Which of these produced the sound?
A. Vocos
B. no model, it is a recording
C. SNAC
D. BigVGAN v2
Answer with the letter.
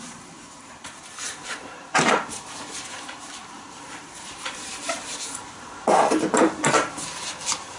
D